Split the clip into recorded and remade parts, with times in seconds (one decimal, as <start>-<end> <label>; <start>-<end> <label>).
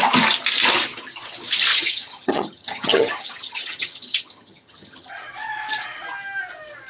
0.0-1.7 recorded; 1.7-5.1 remade; 5.1-6.9 recorded